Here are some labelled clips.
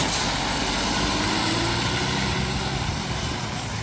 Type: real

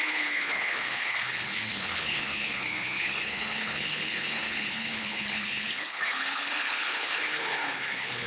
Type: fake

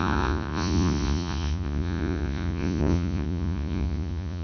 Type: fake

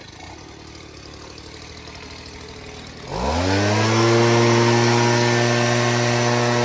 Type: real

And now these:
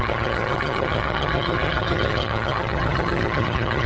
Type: fake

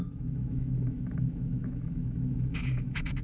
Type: fake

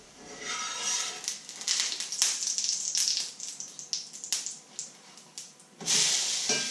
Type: real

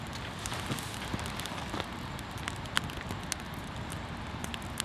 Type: real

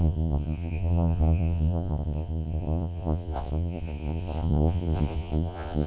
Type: fake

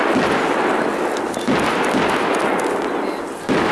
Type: real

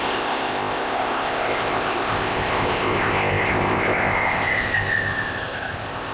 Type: fake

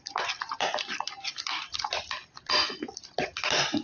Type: real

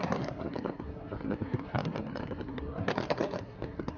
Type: fake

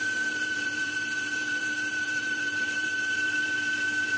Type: fake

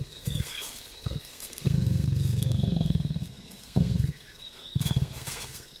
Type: fake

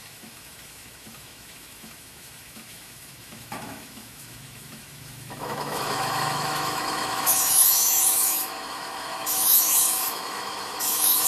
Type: fake